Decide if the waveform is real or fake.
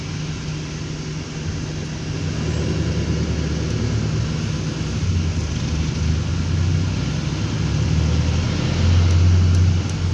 real